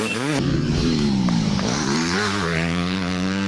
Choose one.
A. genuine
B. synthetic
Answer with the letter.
B